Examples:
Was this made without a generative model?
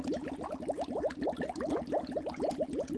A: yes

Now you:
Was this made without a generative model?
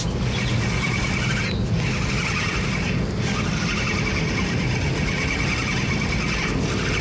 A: yes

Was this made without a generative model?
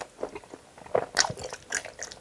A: yes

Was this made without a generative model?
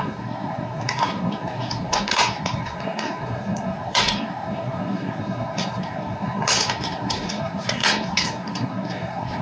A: no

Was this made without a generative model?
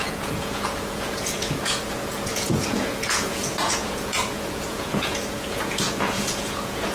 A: no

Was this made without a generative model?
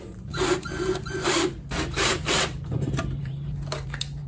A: no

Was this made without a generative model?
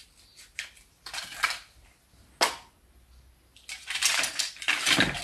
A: yes